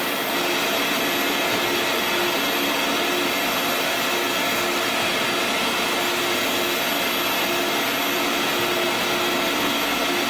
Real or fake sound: real